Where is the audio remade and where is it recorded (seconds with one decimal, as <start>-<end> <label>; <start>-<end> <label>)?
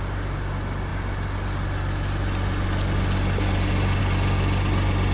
0.0-5.1 recorded